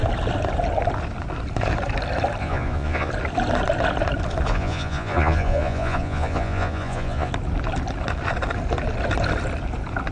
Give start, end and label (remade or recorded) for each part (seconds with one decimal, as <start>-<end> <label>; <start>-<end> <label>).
0.0-2.4 recorded; 2.4-3.1 remade; 3.1-4.5 recorded; 4.5-7.3 remade; 7.3-10.1 recorded